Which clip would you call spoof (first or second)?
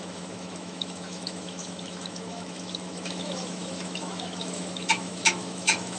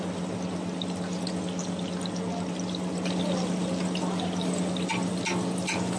first